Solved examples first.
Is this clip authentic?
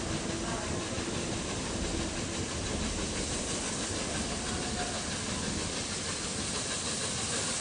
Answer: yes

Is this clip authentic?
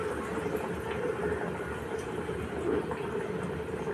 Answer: yes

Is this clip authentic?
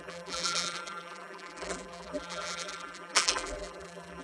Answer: no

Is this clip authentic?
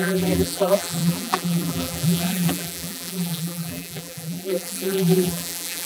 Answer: no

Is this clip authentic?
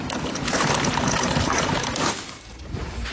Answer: no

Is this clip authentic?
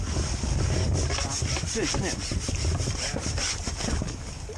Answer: yes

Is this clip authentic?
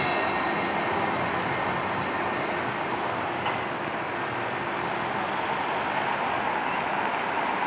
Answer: yes